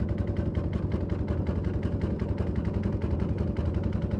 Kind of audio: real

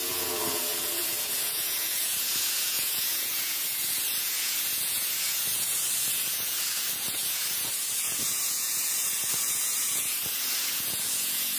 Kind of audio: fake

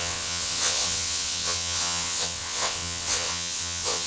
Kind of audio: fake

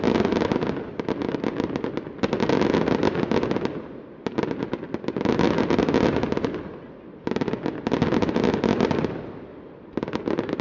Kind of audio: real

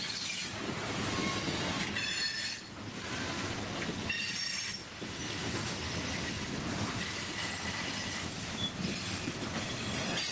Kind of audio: fake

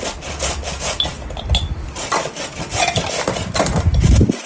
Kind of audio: fake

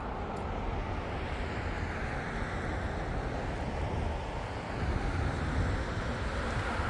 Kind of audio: real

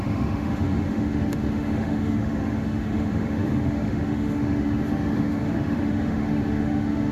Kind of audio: fake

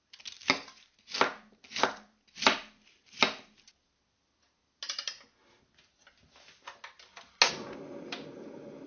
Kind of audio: real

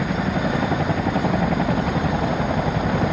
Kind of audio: real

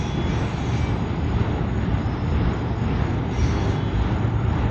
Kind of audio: real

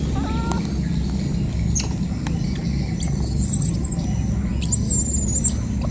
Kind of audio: real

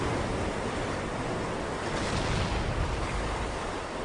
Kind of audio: real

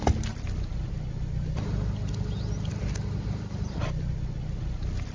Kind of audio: real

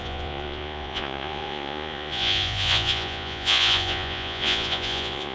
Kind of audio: fake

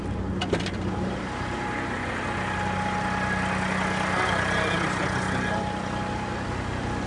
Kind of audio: real